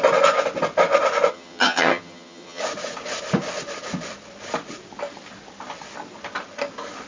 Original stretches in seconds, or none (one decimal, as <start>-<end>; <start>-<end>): 0.0-1.3; 2.6-7.1